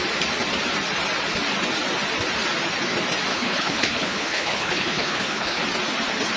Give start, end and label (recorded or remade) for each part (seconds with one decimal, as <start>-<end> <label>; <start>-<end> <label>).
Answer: 0.0-3.3 recorded; 3.3-5.6 remade; 5.6-6.4 recorded